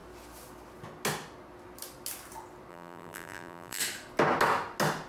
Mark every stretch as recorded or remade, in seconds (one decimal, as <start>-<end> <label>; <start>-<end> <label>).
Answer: 0.0-2.7 recorded; 2.7-3.8 remade; 3.8-5.1 recorded